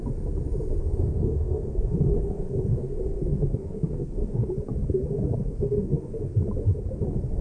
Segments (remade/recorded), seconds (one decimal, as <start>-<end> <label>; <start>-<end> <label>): 0.0-0.8 recorded; 0.8-4.5 remade; 4.5-5.4 recorded; 5.4-6.1 remade; 6.1-7.4 recorded